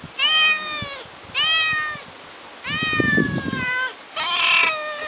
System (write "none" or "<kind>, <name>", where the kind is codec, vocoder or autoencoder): none